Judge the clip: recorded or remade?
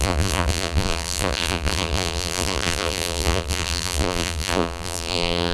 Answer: remade